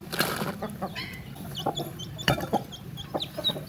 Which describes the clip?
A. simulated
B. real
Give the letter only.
B